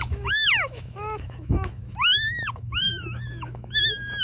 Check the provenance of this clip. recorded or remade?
remade